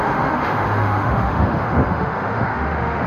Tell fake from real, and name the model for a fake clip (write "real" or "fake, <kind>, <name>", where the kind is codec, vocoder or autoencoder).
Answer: fake, autoencoder, DAC-VAE